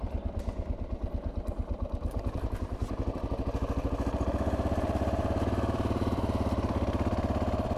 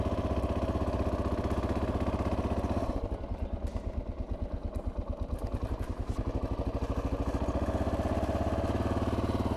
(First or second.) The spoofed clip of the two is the first